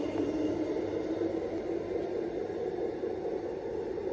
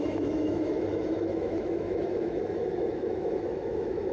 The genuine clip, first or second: first